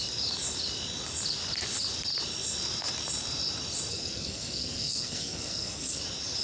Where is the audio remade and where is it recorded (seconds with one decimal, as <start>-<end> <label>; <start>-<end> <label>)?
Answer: 0.0-3.9 recorded; 3.9-6.0 remade; 6.0-6.4 recorded